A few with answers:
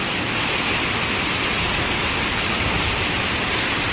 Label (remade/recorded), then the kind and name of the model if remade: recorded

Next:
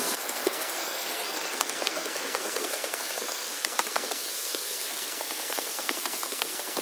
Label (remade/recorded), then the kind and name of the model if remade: remade, codec, SNAC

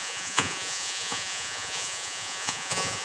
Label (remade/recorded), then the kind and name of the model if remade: remade, vocoder, Vocos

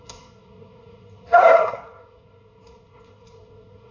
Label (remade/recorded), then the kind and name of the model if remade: remade, codec, SNAC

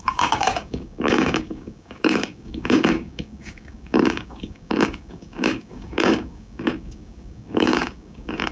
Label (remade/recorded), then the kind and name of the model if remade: remade, codec, DAC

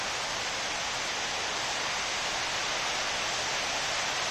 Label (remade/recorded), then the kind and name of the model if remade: recorded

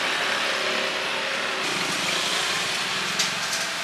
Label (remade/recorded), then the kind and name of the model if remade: recorded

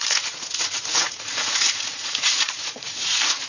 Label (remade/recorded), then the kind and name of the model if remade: remade, vocoder, Vocos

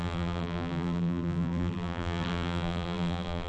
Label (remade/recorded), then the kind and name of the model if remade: remade, vocoder, BigVGAN v2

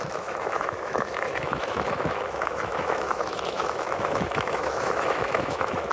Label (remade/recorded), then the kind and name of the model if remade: remade, autoencoder, DAC-VAE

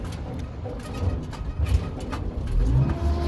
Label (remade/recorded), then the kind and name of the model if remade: recorded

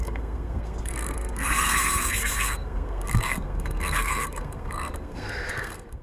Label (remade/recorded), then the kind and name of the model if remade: remade, codec, SNAC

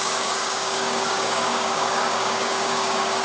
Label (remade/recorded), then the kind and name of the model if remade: remade, codec, DAC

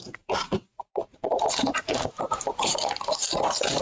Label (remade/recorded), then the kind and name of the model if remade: remade, vocoder, BigVGAN v2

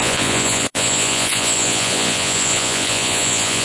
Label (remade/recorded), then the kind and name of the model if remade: remade, vocoder, Vocos